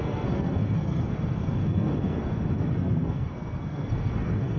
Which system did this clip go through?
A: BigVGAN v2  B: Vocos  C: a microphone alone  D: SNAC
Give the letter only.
D